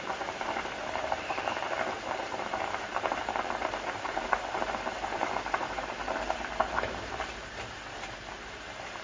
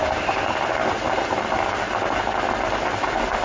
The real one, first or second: second